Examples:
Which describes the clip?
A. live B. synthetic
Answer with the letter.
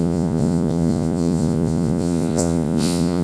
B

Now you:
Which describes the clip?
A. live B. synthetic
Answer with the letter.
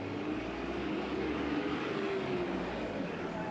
B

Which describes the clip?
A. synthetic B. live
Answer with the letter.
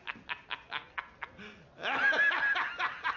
B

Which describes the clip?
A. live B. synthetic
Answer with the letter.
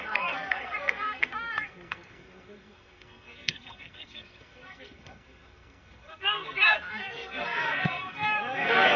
B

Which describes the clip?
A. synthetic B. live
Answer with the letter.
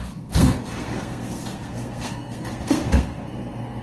A